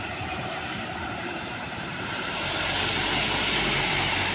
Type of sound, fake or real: fake